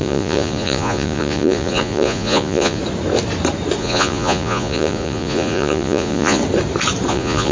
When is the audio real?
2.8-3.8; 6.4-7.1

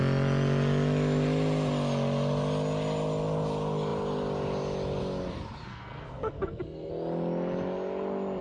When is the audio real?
0.0-5.7; 6.9-8.4